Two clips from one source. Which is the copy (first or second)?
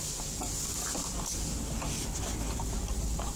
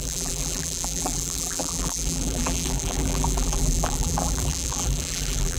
second